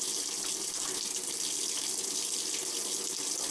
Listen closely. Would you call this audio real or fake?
real